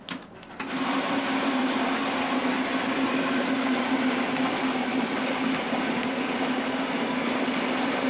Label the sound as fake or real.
real